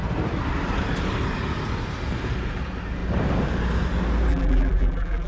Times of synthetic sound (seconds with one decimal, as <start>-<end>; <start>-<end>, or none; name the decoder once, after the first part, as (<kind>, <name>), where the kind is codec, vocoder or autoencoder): 4.3-5.3 (vocoder, BigVGAN v2)